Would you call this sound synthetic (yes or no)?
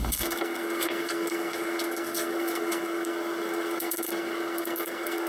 yes